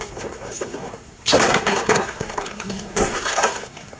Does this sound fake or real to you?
fake